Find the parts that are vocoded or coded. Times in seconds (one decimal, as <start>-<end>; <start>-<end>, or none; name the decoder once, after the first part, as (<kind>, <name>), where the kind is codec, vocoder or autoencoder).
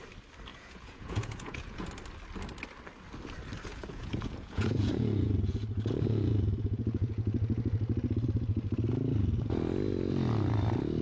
0.5-1.9 (vocoder, Vocos); 3.7-7.3